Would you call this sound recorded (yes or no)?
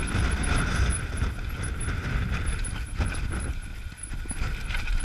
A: yes